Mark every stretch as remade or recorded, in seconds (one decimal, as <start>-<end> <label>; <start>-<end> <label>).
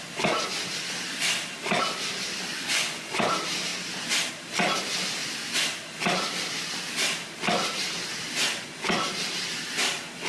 0.0-2.5 recorded; 2.5-3.3 remade; 3.3-10.3 recorded